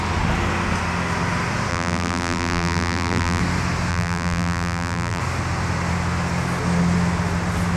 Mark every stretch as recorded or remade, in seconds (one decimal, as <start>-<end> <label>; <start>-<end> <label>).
0.0-1.7 recorded; 1.7-3.4 remade; 3.4-3.9 recorded; 3.9-5.2 remade; 5.2-7.8 recorded